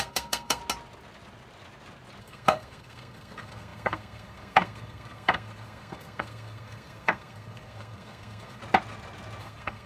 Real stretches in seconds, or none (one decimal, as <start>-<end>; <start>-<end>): 0.6-2.2; 8.6-9.4